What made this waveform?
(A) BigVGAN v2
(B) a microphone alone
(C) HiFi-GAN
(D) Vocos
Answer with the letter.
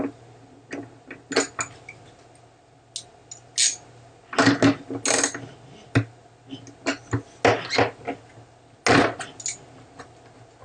B